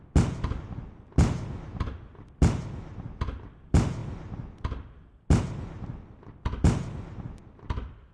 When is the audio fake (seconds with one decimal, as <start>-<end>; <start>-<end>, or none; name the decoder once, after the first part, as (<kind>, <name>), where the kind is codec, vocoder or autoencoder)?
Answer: none